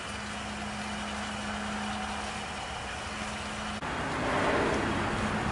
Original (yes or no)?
yes